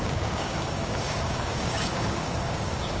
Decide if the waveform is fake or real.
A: fake